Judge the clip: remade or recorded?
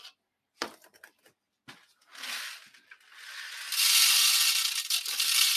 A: recorded